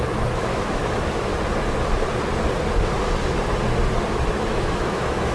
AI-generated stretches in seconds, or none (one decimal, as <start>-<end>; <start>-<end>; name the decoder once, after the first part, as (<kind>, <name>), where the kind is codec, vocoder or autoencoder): 0.0-1.3 (autoencoder, DAC-VAE); 4.5-5.3